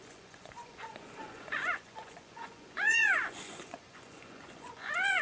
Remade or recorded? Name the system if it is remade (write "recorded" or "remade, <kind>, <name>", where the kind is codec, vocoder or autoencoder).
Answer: remade, vocoder, Vocos